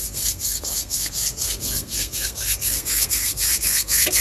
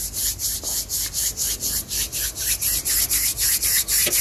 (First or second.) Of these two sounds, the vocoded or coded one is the first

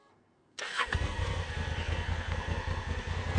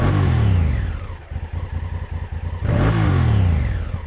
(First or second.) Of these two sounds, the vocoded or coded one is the first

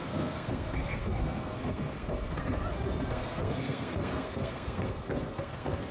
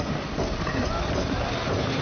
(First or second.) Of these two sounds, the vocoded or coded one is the first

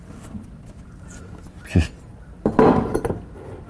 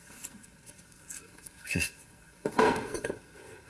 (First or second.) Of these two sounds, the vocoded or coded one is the second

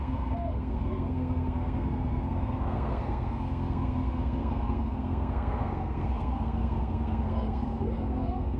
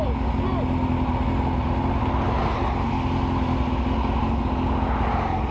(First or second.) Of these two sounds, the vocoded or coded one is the first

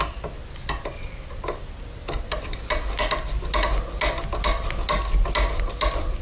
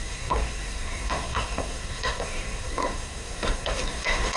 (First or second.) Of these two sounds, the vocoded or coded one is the second